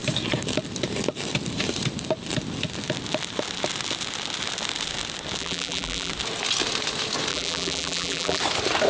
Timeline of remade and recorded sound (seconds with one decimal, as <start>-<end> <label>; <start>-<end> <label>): 0.0-5.4 recorded; 5.4-6.1 remade; 6.1-7.3 recorded; 7.3-8.4 remade; 8.4-8.9 recorded